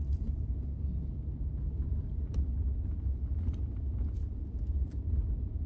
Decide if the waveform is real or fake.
real